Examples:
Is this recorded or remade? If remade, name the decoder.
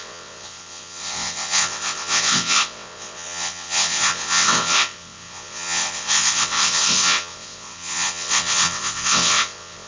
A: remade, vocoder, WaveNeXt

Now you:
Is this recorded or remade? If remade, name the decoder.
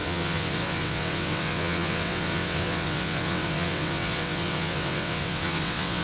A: remade, vocoder, WaveNeXt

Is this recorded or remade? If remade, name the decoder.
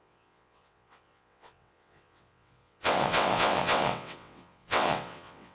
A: remade, vocoder, WaveNeXt